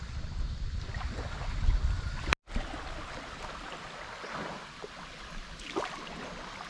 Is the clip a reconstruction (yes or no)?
no